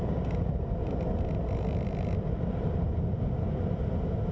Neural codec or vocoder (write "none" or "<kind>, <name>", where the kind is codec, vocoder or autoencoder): none